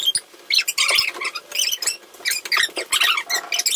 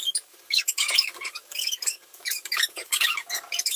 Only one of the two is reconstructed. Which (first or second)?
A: second